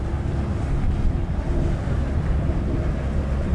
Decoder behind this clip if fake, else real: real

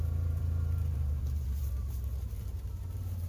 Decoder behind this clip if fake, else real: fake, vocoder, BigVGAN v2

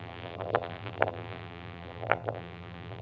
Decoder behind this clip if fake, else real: fake, vocoder, BigVGAN v2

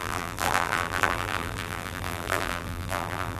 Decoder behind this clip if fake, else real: fake, vocoder, BigVGAN v2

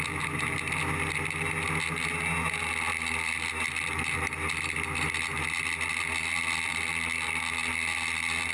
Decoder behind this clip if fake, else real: real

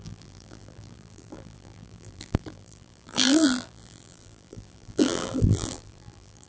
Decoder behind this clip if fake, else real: fake, vocoder, BigVGAN v2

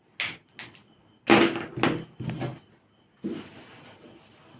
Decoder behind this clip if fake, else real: real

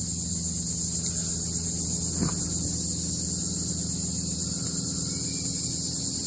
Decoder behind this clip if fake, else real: real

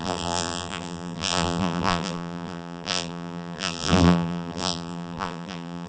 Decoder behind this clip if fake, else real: fake, vocoder, BigVGAN v2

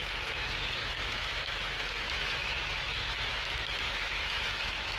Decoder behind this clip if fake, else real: fake, autoencoder, DAC-VAE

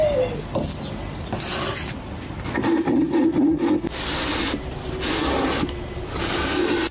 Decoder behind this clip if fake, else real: fake, vocoder, BigVGAN v2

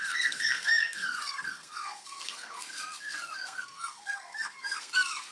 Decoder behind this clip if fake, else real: fake, codec, SNAC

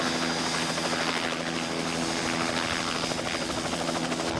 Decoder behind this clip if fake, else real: real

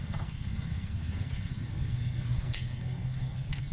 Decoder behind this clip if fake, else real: fake, codec, SNAC